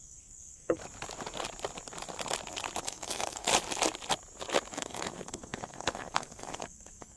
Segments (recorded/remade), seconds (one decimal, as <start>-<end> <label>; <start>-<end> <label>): 0.0-0.8 remade; 0.8-2.8 recorded; 2.8-3.5 remade; 3.5-4.7 recorded; 4.7-7.2 remade